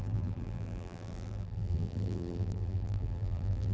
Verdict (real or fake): fake